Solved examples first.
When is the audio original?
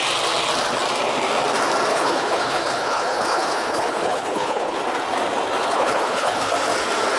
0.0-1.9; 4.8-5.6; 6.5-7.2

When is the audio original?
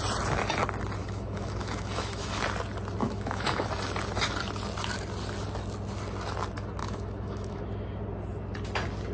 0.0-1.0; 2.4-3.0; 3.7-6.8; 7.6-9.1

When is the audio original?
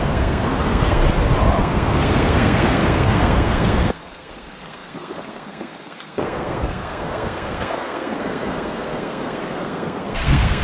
1.0-1.6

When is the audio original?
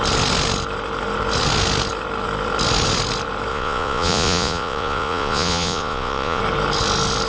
0.0-3.5; 6.4-7.3